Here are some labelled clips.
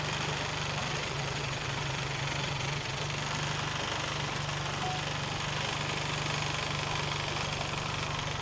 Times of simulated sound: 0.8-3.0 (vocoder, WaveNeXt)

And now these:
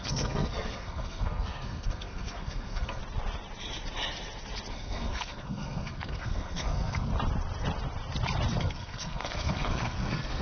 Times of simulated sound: 0.0-3.0 (codec, SNAC); 4.7-7.1; 8.6-10.4

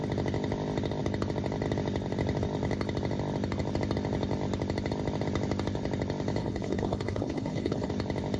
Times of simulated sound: 6.4-7.9 (codec, HILCodec)

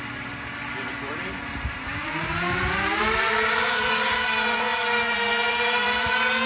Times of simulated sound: 0.0-6.5 (vocoder, BigVGAN v2)

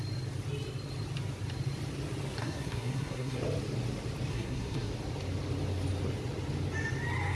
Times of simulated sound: 2.4-3.4 (codec, SNAC); 4.3-4.9

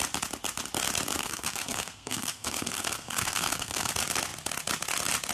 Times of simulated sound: 1.2-3.9 (codec, SNAC)